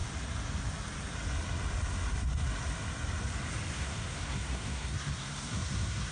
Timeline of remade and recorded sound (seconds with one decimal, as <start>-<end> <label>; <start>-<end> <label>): 0.0-3.7 recorded; 3.7-6.1 remade

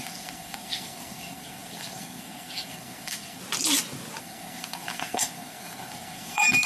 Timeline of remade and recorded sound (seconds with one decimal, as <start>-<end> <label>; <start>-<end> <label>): 0.0-3.4 remade; 3.4-4.2 recorded; 4.2-6.7 remade

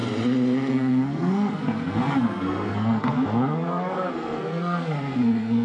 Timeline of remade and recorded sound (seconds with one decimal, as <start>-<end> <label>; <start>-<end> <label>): 0.0-0.7 recorded; 0.7-5.6 remade

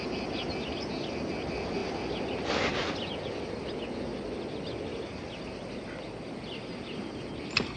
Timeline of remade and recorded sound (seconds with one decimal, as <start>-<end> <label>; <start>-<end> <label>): 0.0-7.8 recorded